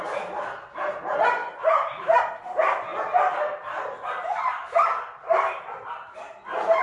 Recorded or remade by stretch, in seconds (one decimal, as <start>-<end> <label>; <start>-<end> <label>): 0.0-6.8 recorded